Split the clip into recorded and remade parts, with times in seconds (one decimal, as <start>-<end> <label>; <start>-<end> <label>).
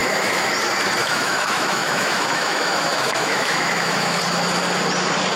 0.0-0.5 remade; 0.5-1.0 recorded; 1.0-4.2 remade; 4.2-5.4 recorded